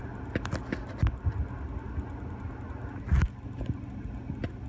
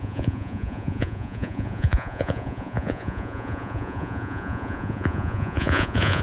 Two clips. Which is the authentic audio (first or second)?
first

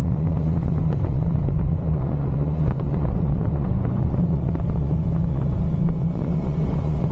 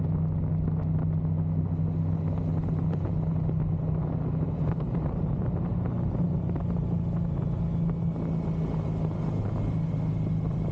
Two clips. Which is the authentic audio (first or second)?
second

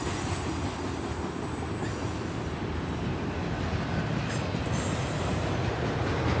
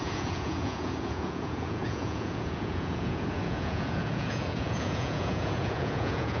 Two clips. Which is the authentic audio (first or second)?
first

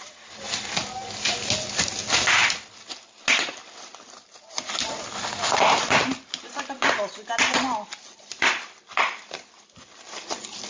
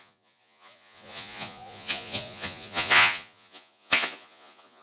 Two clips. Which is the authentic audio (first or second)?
first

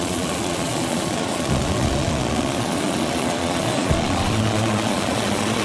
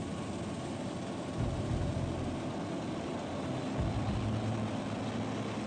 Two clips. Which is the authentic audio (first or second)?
second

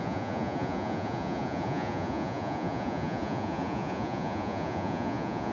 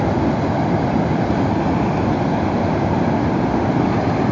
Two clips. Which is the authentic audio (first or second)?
second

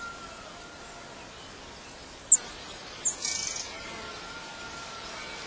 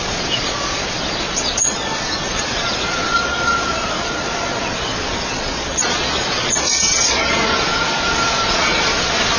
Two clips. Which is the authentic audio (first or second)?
first